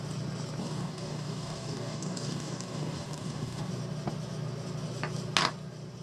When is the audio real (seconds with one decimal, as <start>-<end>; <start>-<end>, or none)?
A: 0.0-0.6; 3.7-6.0